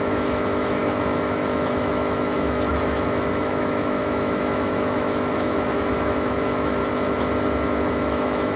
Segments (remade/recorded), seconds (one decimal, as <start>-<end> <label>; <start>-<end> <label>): 0.0-6.8 remade; 6.8-7.9 recorded; 7.9-8.6 remade